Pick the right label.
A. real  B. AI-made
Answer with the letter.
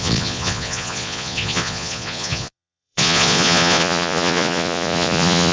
B